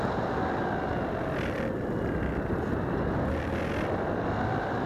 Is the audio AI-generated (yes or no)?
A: no